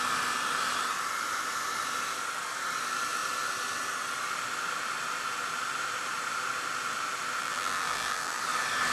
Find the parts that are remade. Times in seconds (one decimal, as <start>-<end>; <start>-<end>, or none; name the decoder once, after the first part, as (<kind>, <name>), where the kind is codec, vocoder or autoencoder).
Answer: 7.4-8.4 (vocoder, BigVGAN v2)

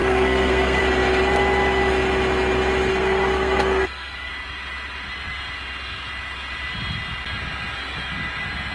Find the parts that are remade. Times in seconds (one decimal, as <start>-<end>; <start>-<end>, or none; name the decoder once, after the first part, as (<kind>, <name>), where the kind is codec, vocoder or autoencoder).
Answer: 0.0-0.8 (codec, SNAC); 2.9-4.3